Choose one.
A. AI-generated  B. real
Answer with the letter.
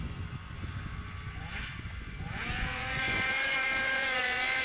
A